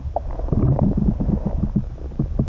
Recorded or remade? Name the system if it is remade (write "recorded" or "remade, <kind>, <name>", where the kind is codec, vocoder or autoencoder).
remade, vocoder, BigVGAN v2